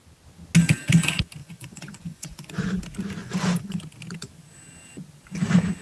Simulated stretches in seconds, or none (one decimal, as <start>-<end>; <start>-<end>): 1.4-2.8; 3.2-3.8

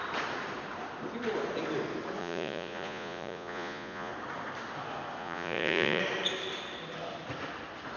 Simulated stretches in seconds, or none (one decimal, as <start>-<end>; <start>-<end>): 2.2-4.1; 5.2-6.0

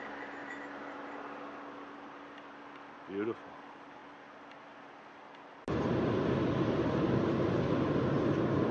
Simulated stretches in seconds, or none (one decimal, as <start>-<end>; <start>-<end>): none

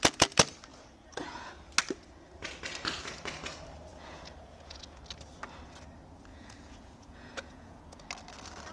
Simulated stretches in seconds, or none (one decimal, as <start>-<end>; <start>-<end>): 0.7-1.5; 3.9-5.0; 6.3-8.0

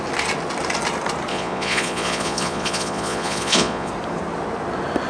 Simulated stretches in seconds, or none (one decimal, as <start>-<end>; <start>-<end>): 1.3-3.9

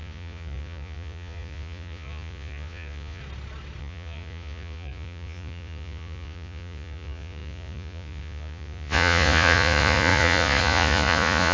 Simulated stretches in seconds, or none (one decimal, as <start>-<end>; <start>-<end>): 0.0-3.2; 3.8-11.5

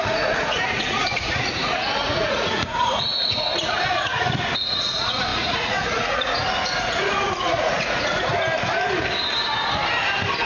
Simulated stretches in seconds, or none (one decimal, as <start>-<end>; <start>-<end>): 0.0-8.3